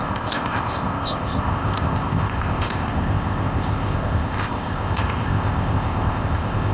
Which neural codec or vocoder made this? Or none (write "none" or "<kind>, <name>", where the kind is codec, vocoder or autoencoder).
codec, ZipCodec